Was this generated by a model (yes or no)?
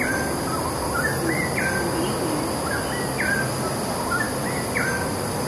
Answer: no